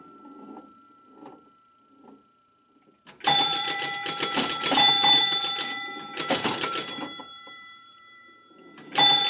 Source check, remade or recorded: remade